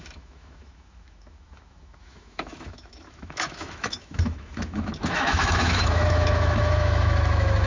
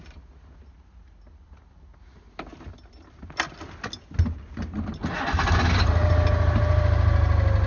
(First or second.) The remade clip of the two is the first